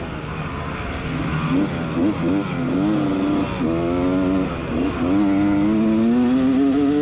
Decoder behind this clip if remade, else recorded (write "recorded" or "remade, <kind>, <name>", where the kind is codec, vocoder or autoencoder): recorded